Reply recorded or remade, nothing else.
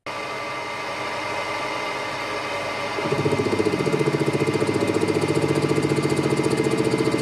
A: recorded